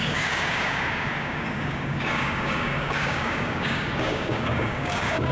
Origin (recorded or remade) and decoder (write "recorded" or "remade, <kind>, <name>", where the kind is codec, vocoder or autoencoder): remade, codec, DAC